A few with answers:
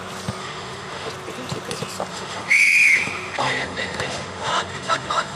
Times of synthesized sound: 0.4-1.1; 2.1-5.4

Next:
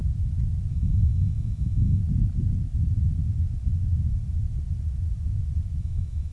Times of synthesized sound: 0.7-2.0; 5.8-6.3

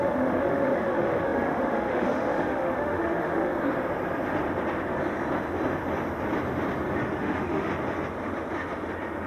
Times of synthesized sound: 0.0-3.5; 7.2-7.7

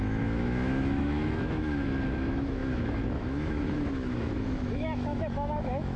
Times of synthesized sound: 0.0-6.0

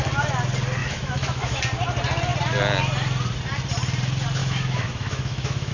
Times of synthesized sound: 0.8-1.6; 4.4-5.7